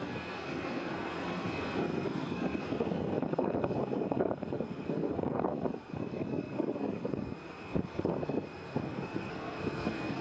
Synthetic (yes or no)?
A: yes